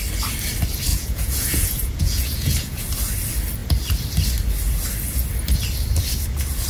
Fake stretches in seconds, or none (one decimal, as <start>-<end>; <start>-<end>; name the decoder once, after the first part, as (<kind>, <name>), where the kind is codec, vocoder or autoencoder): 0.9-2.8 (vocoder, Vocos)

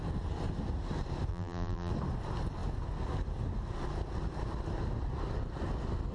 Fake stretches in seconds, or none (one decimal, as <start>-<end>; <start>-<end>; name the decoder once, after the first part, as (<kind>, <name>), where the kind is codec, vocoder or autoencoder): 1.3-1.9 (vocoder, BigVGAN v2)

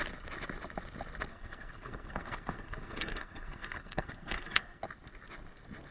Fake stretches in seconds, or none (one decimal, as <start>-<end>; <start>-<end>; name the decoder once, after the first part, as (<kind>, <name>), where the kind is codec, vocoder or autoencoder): 1.3-4.8 (codec, SNAC)

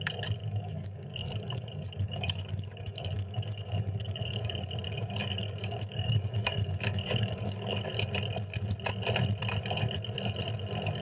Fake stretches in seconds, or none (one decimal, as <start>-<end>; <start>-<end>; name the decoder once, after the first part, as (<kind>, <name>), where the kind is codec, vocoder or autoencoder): 0.4-4.7 (codec, DAC); 5.2-7.9